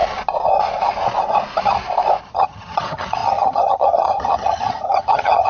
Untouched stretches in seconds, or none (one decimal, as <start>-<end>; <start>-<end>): 0.0-2.2